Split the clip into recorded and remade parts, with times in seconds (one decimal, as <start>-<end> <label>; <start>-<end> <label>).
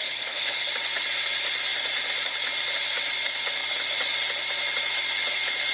0.0-0.7 remade; 0.7-5.7 recorded